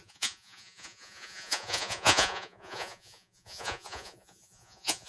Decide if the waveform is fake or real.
fake